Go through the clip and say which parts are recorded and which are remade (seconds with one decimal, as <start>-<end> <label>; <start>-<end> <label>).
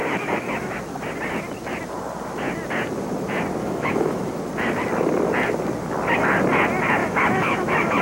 0.0-0.8 remade; 0.8-3.6 recorded; 3.6-4.3 remade; 4.3-7.0 recorded; 7.0-8.0 remade